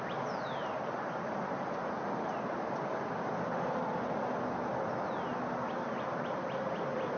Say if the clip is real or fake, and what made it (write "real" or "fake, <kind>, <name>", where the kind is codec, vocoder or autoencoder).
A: real